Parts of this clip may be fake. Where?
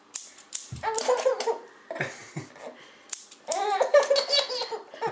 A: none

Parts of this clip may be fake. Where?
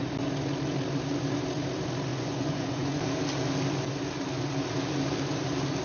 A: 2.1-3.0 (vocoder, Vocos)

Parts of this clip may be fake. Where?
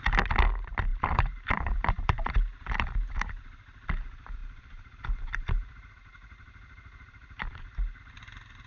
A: 0.9-2.3 (vocoder, BigVGAN v2); 4.4-8.0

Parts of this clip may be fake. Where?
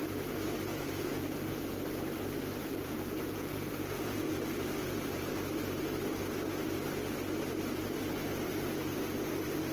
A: 0.7-1.5 (vocoder, Vocos); 2.6-4.3; 4.8-5.3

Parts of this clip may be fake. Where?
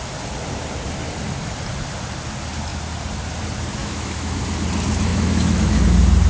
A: 3.8-4.4 (autoencoder, DAC-VAE); 5.1-5.8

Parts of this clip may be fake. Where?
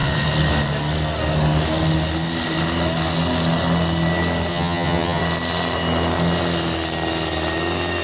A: 4.5-5.2 (vocoder, HiFi-GAN)